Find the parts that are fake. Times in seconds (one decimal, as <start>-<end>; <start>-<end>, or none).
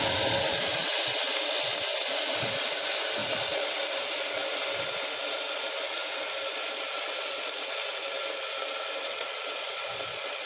9.0-10.5